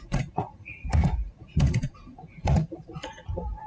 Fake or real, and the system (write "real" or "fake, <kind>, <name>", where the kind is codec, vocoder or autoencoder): fake, vocoder, Vocos